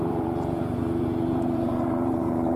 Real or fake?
fake